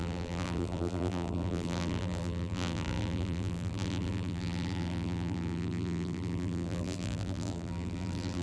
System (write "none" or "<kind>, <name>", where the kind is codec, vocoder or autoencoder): vocoder, BigVGAN v2